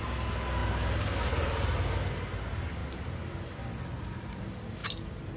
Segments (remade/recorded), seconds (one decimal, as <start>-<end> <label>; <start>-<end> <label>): 0.0-2.8 recorded; 2.8-3.7 remade; 3.7-5.4 recorded